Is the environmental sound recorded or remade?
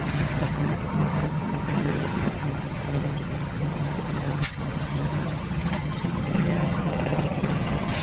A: remade